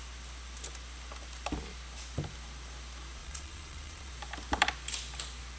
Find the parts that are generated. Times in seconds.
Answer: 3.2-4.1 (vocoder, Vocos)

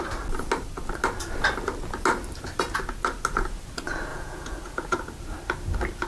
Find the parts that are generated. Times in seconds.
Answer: 4.1-5.0 (vocoder, Vocos)

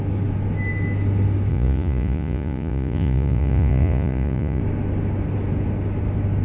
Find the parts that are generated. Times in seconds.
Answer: 1.5-4.6 (vocoder, Vocos)

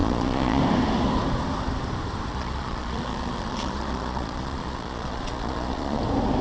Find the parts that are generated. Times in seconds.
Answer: 0.0-0.6 (vocoder, Vocos); 2.3-6.0

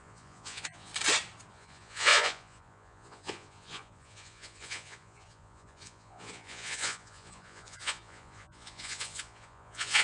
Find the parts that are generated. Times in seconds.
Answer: 0.0-0.9 (vocoder, Vocos); 1.5-10.0

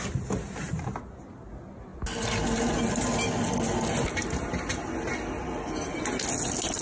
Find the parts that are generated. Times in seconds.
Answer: none

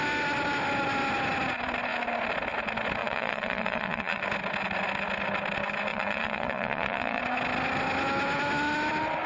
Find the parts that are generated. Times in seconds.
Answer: 3.0-4.2 (vocoder, Vocos); 5.9-7.2